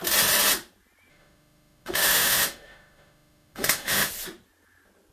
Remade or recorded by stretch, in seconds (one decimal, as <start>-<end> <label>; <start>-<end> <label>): 0.0-1.1 recorded; 1.1-4.1 remade; 4.1-5.1 recorded

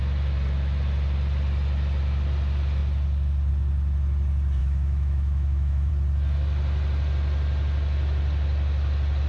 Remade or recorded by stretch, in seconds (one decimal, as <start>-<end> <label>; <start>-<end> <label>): 0.0-4.6 recorded; 4.6-5.9 remade; 5.9-9.3 recorded

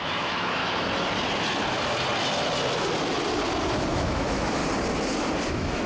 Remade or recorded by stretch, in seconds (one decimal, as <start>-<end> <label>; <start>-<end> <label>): 0.0-0.6 remade; 0.6-3.9 recorded; 3.9-4.6 remade; 4.6-5.5 recorded; 5.5-5.9 remade

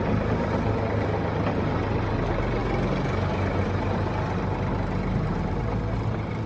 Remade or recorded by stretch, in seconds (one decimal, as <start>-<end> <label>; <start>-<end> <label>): 0.0-6.5 recorded

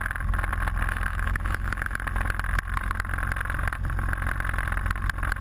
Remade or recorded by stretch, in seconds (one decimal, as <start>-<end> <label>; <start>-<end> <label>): 0.0-1.1 recorded; 1.1-2.0 remade; 2.0-5.4 recorded

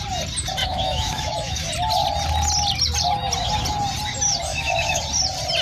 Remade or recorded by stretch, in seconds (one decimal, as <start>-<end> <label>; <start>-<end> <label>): 0.0-0.6 recorded; 0.6-1.7 remade; 1.7-4.5 recorded; 4.5-5.0 remade; 5.0-5.6 recorded

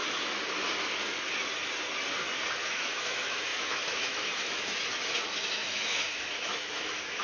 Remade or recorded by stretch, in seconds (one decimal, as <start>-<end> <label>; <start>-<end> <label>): 0.0-2.5 recorded; 2.5-7.2 remade

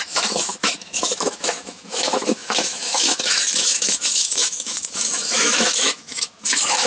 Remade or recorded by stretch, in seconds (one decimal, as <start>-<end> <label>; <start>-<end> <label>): 0.0-6.9 remade